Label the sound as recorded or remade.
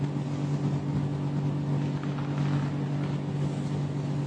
recorded